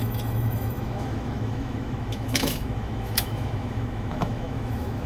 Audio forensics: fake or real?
fake